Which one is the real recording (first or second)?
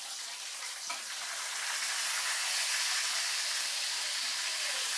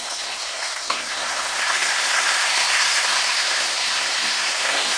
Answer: first